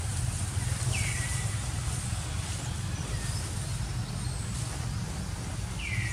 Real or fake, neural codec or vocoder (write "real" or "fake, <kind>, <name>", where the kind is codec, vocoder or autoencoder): real